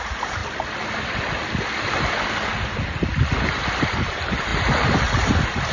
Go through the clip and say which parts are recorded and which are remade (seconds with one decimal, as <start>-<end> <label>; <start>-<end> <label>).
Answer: 0.0-0.4 remade; 0.4-3.8 recorded; 3.8-5.7 remade